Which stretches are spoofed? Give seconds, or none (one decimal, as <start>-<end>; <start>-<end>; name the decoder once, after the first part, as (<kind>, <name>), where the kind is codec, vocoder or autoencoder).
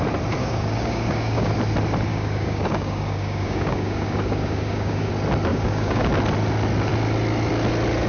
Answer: 0.4-1.5 (codec, DAC); 2.1-5.1; 5.5-6.1